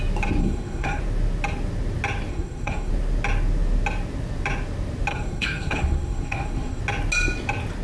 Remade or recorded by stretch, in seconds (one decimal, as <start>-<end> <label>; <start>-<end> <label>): 0.0-0.4 recorded; 0.4-1.0 remade; 1.0-2.3 recorded; 2.3-2.9 remade; 2.9-5.1 recorded; 5.1-6.8 remade; 6.8-7.8 recorded